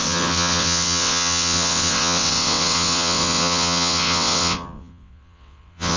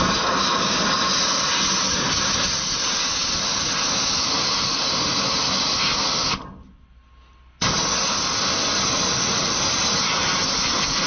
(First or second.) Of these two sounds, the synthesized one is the first